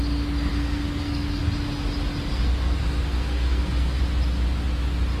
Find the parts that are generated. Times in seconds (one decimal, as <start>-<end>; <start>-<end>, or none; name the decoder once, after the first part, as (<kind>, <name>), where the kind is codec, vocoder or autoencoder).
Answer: 0.5-1.4 (codec, SNAC); 2.3-4.0